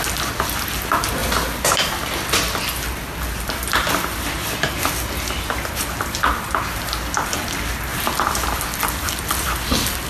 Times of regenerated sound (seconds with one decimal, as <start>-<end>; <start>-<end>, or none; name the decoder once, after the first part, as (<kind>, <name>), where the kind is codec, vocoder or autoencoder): none

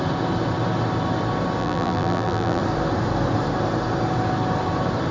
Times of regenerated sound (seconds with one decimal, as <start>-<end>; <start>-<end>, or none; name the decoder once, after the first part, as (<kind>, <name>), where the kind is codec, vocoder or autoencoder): 1.6-2.6 (vocoder, BigVGAN v2)